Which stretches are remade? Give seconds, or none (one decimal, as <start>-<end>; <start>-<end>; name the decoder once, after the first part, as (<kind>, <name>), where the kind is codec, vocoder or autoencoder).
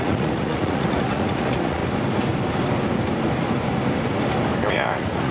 0.0-1.8 (vocoder, Vocos); 4.7-5.3